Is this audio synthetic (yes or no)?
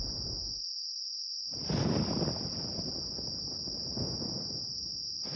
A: no